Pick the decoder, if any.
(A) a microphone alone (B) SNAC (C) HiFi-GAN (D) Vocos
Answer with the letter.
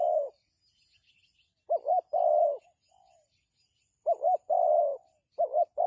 A